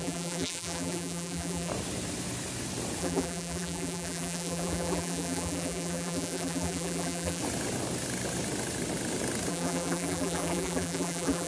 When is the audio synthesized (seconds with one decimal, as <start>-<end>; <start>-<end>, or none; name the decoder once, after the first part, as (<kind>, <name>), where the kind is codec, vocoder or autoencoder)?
0.0-1.7 (vocoder, BigVGAN v2); 3.0-7.4; 9.5-11.5